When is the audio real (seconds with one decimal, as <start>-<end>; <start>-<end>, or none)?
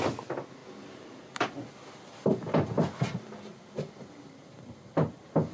0.0-5.5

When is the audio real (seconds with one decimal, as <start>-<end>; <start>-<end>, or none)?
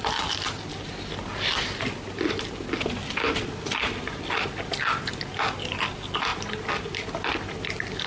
0.0-8.1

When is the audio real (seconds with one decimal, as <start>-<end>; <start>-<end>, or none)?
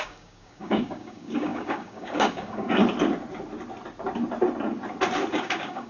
2.8-5.3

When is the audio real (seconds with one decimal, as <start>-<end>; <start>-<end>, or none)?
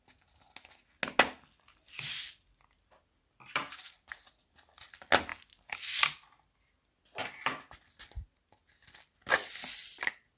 0.0-10.4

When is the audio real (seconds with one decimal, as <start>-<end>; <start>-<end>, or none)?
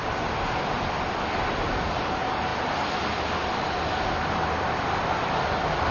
2.5-5.4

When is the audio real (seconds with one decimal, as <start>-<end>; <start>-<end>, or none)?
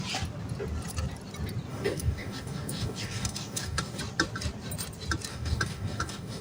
0.0-1.7; 4.0-5.3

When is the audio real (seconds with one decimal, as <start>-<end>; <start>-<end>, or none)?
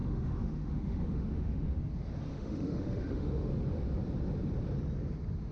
1.8-2.3; 3.5-5.5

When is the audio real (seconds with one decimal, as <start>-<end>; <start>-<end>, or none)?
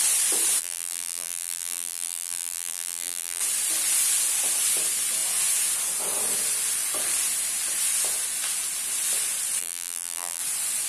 0.0-0.6; 3.4-9.6; 10.4-10.9